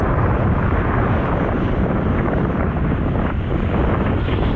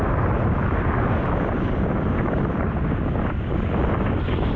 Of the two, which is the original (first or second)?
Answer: second